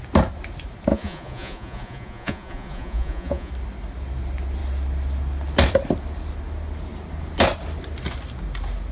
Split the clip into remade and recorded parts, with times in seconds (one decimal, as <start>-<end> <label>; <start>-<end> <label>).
0.0-0.9 recorded; 0.9-3.5 remade; 3.5-8.9 recorded